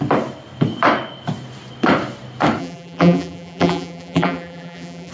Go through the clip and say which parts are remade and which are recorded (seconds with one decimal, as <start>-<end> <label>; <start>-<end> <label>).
0.0-2.6 recorded; 2.6-5.1 remade